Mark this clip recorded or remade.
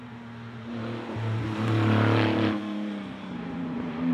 remade